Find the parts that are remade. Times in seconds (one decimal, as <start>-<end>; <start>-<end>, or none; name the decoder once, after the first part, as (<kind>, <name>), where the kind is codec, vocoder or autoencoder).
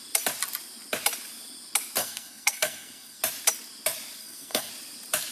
2.0-3.2 (codec, SNAC); 4.2-4.7